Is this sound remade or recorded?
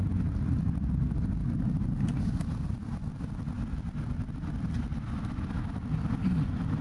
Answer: recorded